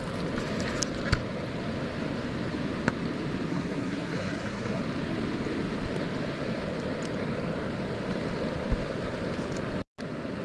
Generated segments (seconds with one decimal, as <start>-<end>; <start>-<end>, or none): 3.5-4.8